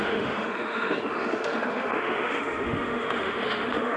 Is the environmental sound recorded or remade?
remade